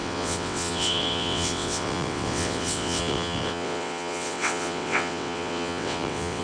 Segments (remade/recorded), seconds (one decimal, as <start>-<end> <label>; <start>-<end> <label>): 0.0-6.4 remade